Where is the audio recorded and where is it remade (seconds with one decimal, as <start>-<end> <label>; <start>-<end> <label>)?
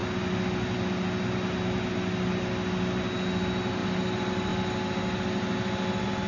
0.0-6.3 recorded